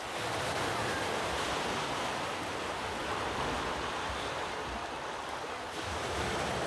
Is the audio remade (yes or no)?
yes